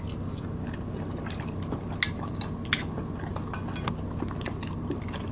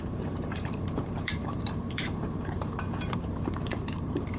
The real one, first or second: first